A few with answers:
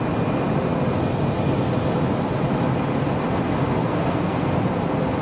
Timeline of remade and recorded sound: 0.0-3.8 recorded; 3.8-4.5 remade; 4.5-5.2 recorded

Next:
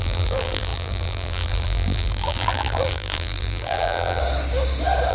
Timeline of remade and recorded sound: 0.0-4.2 remade; 4.2-5.1 recorded